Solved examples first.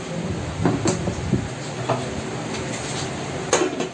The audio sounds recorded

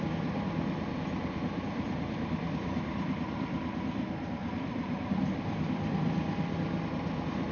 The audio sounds remade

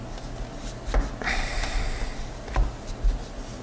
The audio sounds recorded